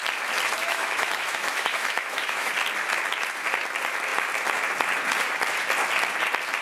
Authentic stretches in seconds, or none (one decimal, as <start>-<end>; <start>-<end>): 0.0-0.6; 2.5-6.6